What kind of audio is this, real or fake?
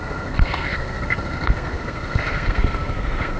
fake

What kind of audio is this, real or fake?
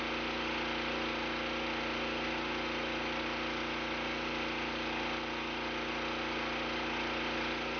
real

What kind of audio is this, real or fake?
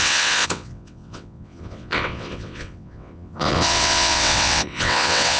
fake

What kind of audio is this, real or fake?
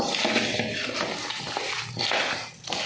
real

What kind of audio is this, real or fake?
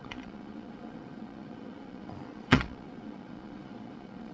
fake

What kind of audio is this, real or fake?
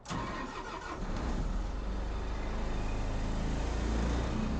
real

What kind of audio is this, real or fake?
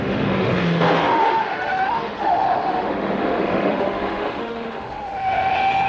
fake